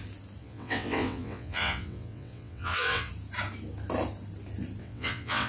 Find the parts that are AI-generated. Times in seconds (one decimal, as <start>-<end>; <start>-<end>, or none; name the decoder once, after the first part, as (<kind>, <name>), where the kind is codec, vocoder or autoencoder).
0.4-3.1 (vocoder, WaveNeXt); 4.8-5.5